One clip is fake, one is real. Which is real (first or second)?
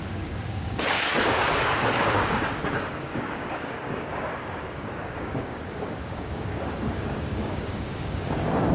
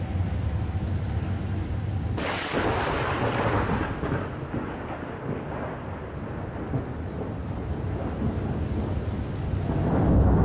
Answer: second